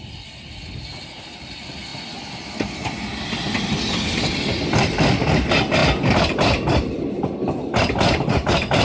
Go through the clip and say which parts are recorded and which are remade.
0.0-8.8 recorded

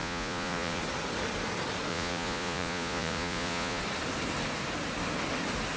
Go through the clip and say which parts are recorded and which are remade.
0.0-0.8 remade; 0.8-1.9 recorded; 1.9-3.8 remade; 3.8-5.8 recorded

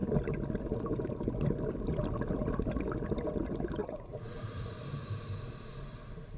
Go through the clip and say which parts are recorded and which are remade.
0.0-3.8 recorded; 3.8-4.7 remade; 4.7-6.4 recorded